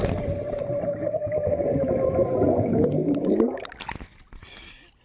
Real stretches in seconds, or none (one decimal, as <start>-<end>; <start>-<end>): 0.0-5.0